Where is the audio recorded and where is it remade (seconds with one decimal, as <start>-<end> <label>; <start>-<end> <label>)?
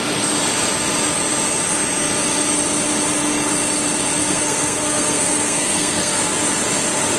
0.0-4.2 recorded; 4.2-6.2 remade; 6.2-7.2 recorded